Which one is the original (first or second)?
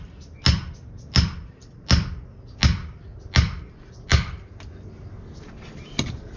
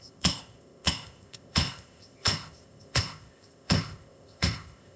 first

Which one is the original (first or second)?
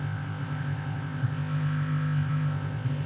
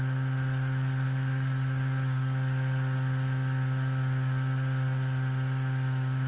second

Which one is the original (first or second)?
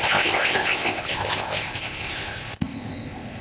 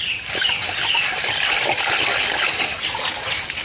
second